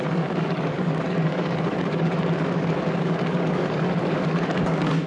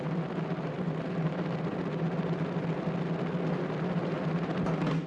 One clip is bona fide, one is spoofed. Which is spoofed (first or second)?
first